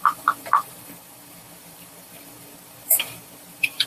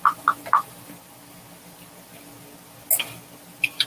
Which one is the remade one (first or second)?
first